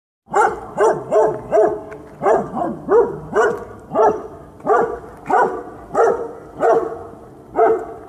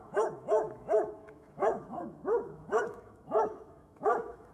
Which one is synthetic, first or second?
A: second